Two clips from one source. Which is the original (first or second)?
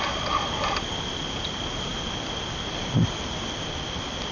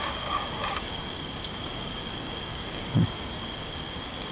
first